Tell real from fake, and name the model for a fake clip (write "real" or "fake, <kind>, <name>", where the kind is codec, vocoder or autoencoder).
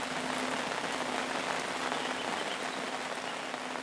real